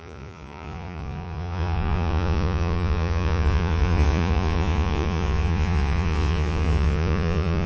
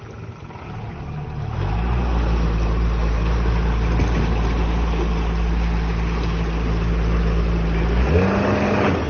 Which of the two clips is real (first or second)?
second